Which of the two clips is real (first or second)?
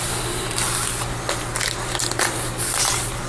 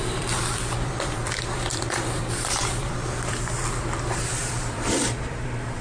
first